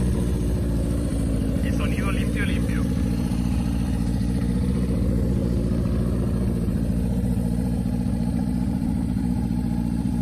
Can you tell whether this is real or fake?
fake